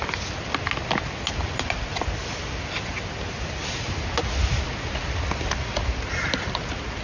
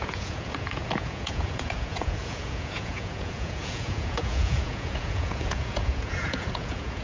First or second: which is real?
first